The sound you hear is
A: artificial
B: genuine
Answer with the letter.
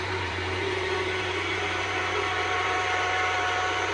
A